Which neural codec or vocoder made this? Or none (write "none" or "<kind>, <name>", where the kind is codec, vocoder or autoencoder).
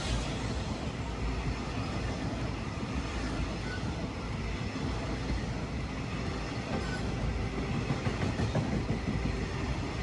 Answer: none